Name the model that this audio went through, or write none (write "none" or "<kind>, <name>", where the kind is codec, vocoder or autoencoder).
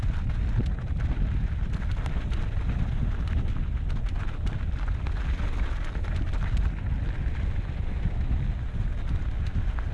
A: none